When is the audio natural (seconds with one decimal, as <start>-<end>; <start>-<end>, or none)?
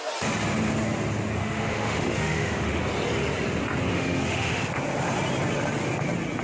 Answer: 0.0-1.4; 2.8-3.9; 4.7-6.4